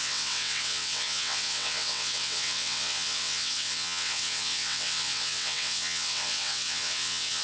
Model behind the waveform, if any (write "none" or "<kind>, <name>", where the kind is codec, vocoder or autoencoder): vocoder, WaveNeXt